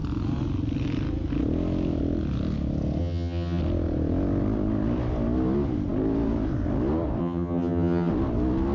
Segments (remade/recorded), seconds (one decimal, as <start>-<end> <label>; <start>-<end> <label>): 0.0-3.0 recorded; 3.0-3.6 remade; 3.6-7.2 recorded; 7.2-8.1 remade; 8.1-8.7 recorded